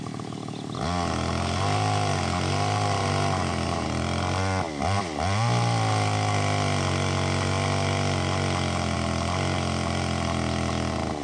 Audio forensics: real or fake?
real